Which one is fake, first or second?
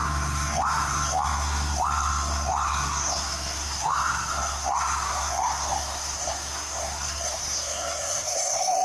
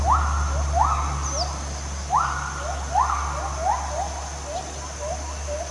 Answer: first